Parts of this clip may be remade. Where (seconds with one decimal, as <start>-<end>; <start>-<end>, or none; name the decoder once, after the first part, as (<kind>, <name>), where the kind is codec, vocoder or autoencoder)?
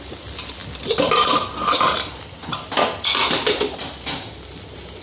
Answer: none